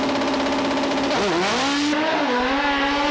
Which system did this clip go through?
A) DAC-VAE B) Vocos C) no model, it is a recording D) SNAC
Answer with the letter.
C